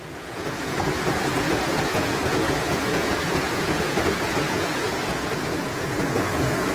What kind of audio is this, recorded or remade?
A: remade